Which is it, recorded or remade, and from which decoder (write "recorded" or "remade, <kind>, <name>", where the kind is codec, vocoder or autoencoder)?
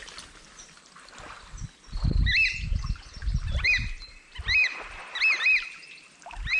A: recorded